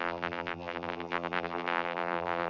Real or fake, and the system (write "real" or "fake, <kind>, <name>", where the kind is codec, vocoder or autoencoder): fake, vocoder, BigVGAN v2